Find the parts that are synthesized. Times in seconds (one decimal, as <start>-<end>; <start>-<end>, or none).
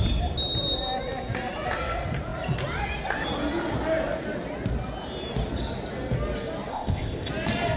6.7-7.3